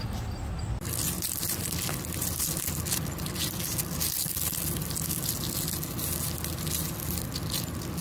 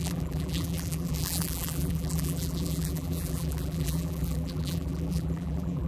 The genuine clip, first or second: first